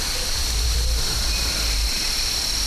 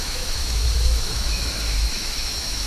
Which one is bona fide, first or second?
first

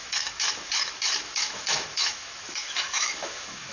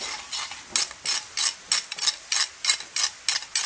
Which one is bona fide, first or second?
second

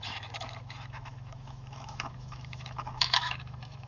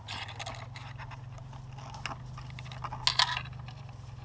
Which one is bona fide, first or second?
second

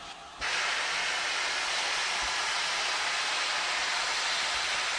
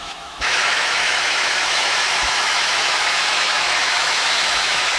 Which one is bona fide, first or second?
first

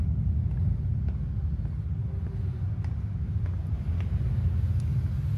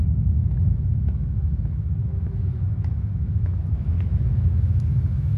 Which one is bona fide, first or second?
first